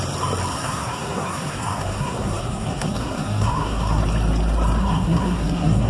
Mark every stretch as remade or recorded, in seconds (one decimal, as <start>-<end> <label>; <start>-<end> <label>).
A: 0.0-0.5 recorded; 0.5-4.0 remade; 4.0-4.8 recorded; 4.8-5.9 remade

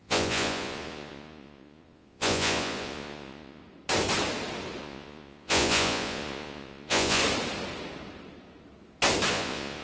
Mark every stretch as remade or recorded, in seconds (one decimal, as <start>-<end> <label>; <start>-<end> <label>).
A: 0.0-3.6 remade; 3.6-4.8 recorded; 4.8-7.2 remade; 7.2-9.3 recorded; 9.3-9.8 remade

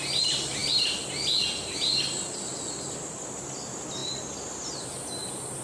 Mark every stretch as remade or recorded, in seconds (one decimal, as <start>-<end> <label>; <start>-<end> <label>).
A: 0.0-5.6 recorded

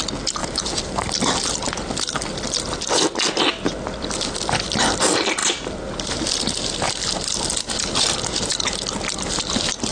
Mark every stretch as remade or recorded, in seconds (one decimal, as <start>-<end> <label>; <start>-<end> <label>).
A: 0.0-9.9 recorded

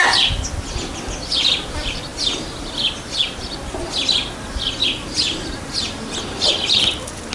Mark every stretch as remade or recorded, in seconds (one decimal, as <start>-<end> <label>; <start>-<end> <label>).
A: 0.0-7.3 recorded

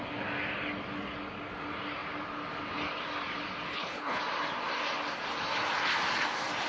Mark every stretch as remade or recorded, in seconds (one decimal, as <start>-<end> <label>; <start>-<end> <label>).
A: 0.0-3.7 recorded; 3.7-4.2 remade; 4.2-6.7 recorded

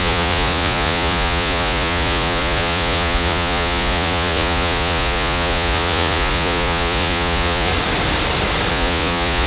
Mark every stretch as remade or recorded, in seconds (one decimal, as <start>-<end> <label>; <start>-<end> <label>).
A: 0.0-7.7 remade; 7.7-8.7 recorded; 8.7-9.5 remade

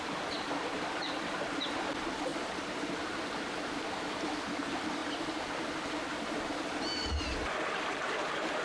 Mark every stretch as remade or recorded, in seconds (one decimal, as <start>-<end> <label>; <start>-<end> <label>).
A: 0.0-2.3 remade; 2.3-3.7 recorded; 3.7-5.0 remade; 5.0-7.8 recorded; 7.8-8.6 remade